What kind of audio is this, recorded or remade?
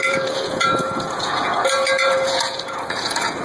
remade